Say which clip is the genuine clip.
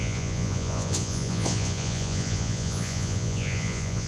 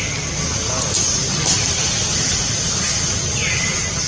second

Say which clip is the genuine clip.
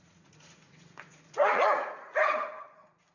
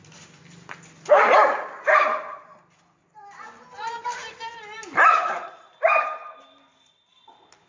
second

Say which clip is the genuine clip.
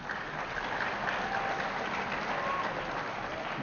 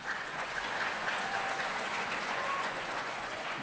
first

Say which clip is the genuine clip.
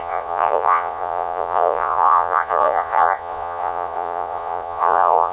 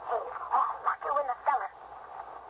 second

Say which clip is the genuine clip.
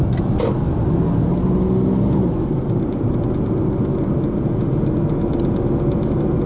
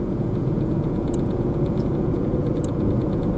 first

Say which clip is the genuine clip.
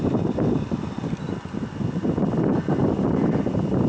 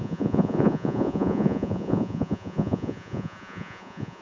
first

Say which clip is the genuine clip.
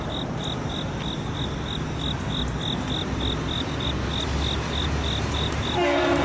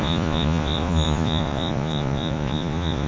first